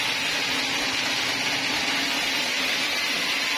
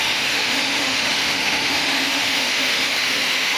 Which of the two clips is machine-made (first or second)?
second